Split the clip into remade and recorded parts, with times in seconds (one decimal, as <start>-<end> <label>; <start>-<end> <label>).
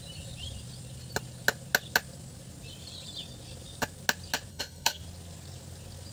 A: 0.0-4.5 recorded; 4.5-5.0 remade; 5.0-6.1 recorded